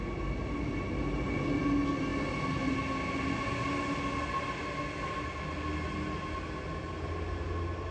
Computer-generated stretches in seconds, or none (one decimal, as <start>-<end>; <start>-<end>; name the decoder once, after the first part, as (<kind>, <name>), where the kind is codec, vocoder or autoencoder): none